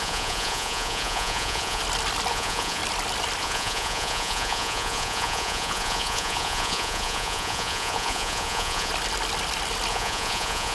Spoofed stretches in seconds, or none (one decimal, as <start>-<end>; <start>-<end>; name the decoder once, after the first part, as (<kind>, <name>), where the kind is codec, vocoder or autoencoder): 0.0-1.8 (vocoder, Vocos); 2.3-2.8; 3.4-8.9; 9.9-10.7